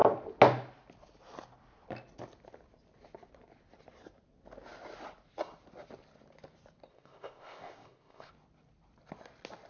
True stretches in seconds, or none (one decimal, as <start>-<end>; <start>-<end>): 0.0-6.9; 8.3-9.7